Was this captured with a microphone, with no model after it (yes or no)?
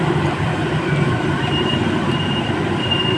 no